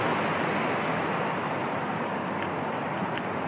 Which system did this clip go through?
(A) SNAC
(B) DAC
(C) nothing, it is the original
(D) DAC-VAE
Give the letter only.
C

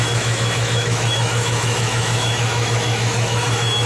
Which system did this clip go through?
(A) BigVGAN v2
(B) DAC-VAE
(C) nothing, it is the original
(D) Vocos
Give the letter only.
B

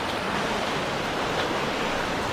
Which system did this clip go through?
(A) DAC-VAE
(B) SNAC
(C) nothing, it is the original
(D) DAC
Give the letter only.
C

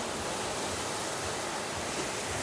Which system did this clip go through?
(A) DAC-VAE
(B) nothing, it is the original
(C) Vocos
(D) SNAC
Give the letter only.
B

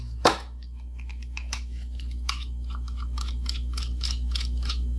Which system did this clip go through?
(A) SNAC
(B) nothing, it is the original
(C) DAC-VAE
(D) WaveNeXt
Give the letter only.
C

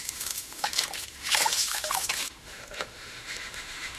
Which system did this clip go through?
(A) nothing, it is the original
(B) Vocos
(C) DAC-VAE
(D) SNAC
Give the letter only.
C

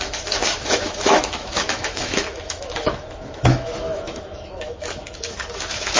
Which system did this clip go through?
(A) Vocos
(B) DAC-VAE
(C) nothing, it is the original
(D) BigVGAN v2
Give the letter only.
B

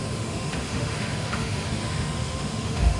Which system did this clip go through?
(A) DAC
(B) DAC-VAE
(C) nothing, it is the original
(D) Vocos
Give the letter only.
B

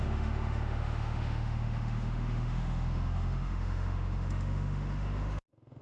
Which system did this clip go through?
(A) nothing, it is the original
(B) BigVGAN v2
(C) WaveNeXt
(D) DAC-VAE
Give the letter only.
D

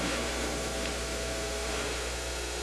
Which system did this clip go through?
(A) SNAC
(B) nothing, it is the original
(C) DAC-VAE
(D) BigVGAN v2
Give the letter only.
C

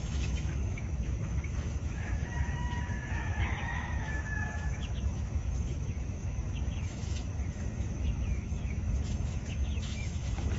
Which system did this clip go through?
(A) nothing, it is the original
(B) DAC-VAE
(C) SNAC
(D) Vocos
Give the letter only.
B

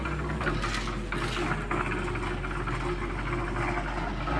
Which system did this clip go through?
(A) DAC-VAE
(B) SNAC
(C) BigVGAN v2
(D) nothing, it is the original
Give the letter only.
D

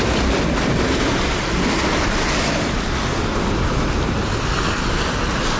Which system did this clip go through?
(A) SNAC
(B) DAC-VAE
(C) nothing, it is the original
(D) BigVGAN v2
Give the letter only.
C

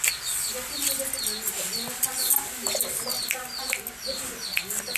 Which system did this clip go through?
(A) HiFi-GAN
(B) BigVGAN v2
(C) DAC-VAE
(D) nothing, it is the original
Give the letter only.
D